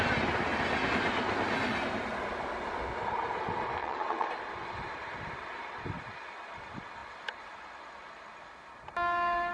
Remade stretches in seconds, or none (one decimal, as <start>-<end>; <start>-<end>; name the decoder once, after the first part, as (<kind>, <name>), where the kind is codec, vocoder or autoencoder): 3.8-4.3 (vocoder, WaveNeXt)